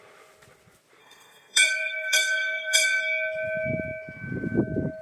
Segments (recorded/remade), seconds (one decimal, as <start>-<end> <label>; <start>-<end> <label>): 0.0-1.0 recorded; 1.0-3.0 remade; 3.0-5.0 recorded